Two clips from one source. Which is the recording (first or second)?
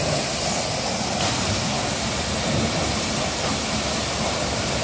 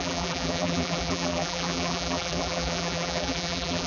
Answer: first